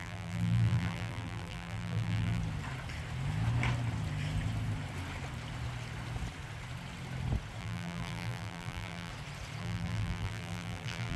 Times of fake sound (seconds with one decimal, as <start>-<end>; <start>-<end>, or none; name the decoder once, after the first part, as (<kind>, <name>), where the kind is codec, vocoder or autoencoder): 0.0-2.4 (vocoder, BigVGAN v2); 7.6-9.1; 9.6-11.2